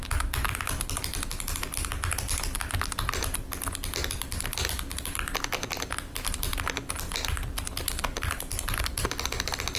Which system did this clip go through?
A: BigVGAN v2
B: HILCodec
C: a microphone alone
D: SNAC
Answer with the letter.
C